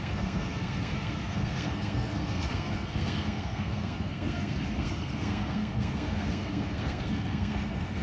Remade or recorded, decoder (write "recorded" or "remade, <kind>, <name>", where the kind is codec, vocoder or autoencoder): remade, codec, SNAC